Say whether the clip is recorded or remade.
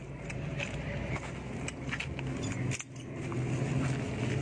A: recorded